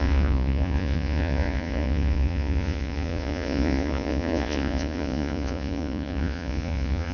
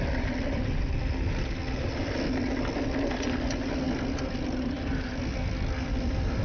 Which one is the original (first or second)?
second